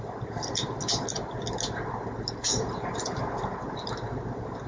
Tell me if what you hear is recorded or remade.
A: recorded